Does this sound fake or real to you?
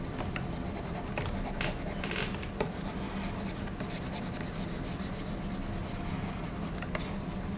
real